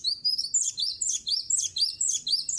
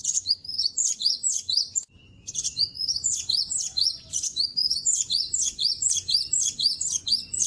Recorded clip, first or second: first